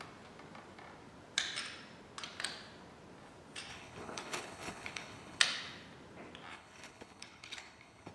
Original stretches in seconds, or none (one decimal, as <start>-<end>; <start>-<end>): 0.0-3.7; 5.4-6.5